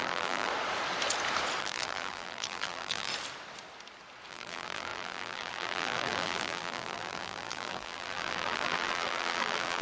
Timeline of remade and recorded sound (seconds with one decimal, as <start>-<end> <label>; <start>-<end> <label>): 0.0-0.5 remade; 0.5-1.6 recorded; 1.6-3.1 remade; 3.1-4.3 recorded; 4.3-9.8 remade